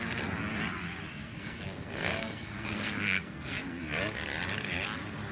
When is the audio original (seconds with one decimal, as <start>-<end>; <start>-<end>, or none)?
0.0-1.1; 3.8-5.3

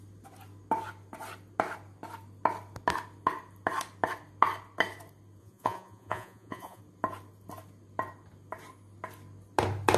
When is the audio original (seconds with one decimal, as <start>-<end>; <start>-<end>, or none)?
0.0-5.4; 6.8-10.0

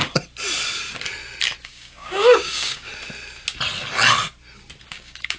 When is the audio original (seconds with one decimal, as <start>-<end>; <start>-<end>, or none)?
0.0-1.6; 2.9-4.8

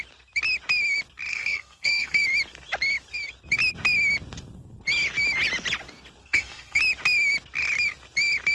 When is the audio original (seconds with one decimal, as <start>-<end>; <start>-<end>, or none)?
0.0-1.3; 2.2-6.2; 6.8-8.5

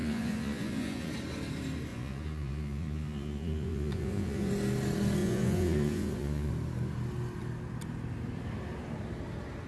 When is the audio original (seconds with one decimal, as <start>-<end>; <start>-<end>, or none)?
1.1-1.9; 4.5-5.2; 6.5-9.7

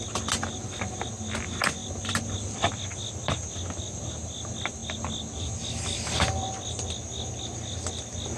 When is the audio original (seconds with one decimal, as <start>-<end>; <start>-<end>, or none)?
0.0-8.4